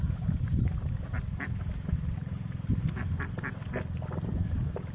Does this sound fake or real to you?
real